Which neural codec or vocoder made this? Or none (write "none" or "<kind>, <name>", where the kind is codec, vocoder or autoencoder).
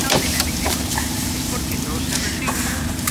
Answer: vocoder, BigVGAN v2